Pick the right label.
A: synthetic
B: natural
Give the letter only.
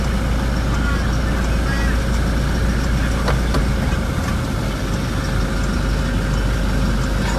B